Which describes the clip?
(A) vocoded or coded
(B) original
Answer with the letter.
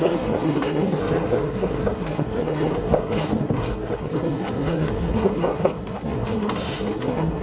A